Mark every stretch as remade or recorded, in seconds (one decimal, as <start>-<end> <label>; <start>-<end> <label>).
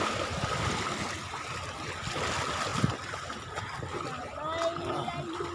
0.0-2.7 recorded; 2.7-3.5 remade; 3.5-5.5 recorded